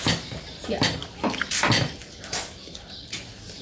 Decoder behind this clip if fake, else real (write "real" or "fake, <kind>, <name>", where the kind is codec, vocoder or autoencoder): real